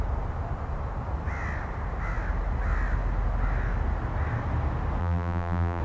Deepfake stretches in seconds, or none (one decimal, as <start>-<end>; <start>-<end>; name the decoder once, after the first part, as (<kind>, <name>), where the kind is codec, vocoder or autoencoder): 5.0-5.8 (vocoder, BigVGAN v2)